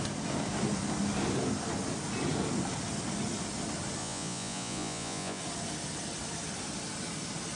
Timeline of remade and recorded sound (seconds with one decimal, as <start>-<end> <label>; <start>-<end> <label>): 0.0-4.0 recorded; 4.0-5.4 remade; 5.4-7.6 recorded